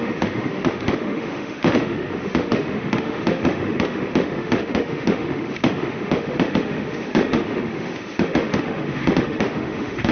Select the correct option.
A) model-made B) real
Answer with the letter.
A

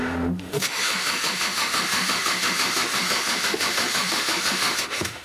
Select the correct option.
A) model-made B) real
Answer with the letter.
A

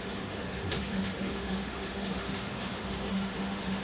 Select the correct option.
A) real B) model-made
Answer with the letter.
B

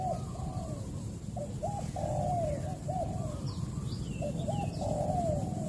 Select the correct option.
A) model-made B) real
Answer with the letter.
B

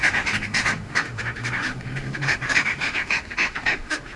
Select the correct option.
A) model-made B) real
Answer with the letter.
A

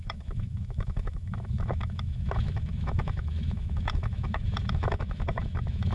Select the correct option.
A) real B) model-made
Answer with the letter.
B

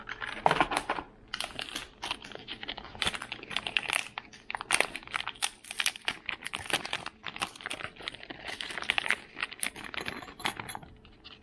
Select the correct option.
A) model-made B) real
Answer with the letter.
B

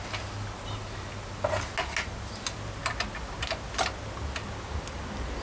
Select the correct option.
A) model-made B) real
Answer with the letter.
B